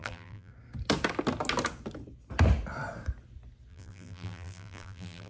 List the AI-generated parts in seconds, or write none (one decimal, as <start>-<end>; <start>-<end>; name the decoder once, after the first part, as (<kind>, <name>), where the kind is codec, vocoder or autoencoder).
0.0-0.5 (vocoder, BigVGAN v2); 3.7-5.3